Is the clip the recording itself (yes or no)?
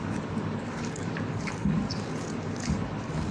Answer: no